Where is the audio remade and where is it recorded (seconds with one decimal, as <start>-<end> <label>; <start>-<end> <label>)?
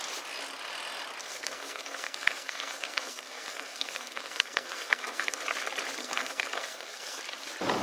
0.0-1.2 recorded; 1.2-5.4 remade; 5.4-6.0 recorded; 6.0-7.2 remade; 7.2-7.8 recorded